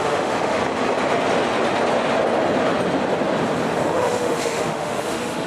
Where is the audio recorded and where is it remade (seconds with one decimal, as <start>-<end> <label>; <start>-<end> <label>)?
0.0-0.6 remade; 0.6-3.9 recorded; 3.9-5.5 remade